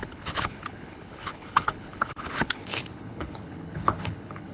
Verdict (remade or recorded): remade